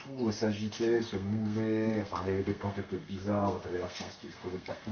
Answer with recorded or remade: remade